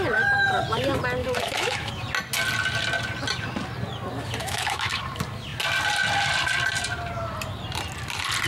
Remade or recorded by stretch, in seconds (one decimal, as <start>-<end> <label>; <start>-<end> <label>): 0.0-1.2 recorded; 1.2-1.9 remade; 1.9-4.4 recorded; 4.4-5.0 remade; 5.0-8.5 recorded